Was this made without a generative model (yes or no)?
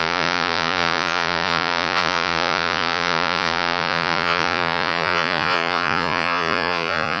no